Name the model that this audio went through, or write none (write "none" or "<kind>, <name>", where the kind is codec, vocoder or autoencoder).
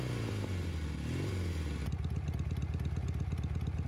none